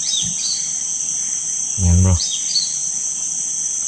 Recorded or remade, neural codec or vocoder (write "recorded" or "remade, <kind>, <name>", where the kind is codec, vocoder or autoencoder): recorded